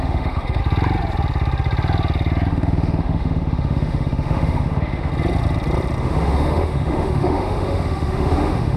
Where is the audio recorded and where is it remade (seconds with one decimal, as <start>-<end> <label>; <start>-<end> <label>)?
0.0-0.6 remade; 0.6-2.5 recorded; 2.5-5.1 remade; 5.1-6.0 recorded; 6.0-8.8 remade